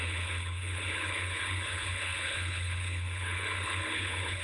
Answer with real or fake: fake